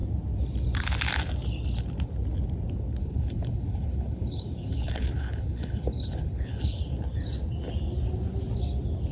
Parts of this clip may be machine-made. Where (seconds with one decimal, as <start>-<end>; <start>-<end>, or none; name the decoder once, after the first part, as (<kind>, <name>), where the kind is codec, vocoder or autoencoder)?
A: 3.0-6.8 (codec, HILCodec)